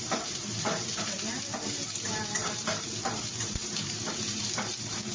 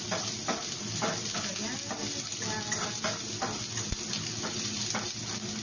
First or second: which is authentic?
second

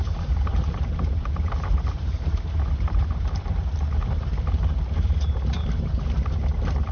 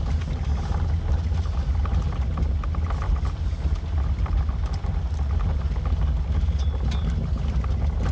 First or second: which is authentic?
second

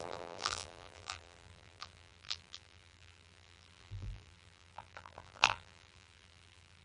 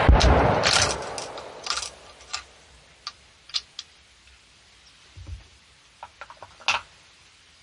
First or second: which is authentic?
second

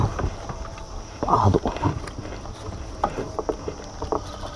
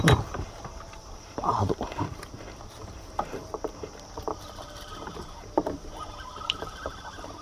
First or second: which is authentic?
first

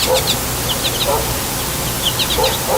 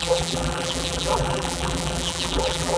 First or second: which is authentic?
first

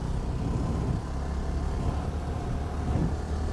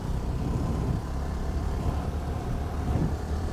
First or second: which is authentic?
first